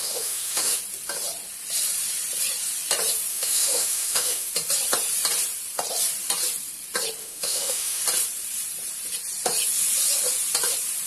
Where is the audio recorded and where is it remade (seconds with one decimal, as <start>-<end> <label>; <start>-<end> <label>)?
0.0-0.8 remade; 0.8-3.3 recorded; 3.3-4.5 remade; 4.5-7.2 recorded; 7.2-8.0 remade; 8.0-11.1 recorded